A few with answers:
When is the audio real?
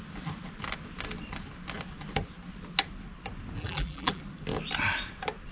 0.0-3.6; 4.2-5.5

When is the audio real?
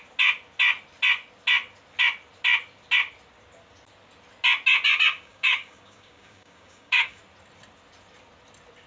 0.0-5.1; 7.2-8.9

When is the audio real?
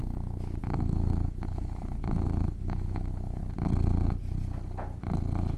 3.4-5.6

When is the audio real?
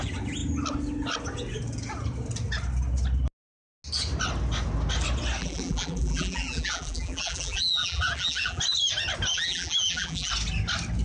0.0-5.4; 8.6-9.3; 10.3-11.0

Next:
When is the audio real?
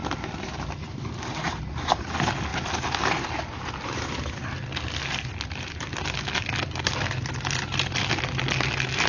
1.6-9.1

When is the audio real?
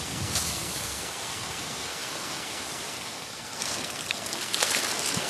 none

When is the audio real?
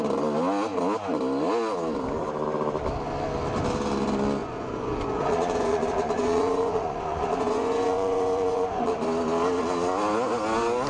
0.0-4.4; 8.9-10.9